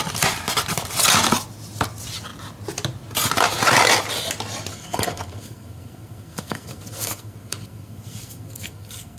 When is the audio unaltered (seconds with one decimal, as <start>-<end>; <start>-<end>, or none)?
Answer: 0.0-4.7

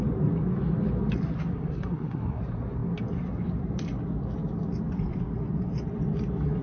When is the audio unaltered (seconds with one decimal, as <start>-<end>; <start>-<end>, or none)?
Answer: 0.0-1.5; 2.4-6.6